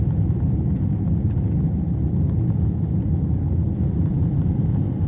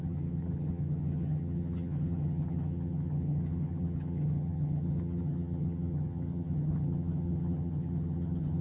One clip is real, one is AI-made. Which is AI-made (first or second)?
second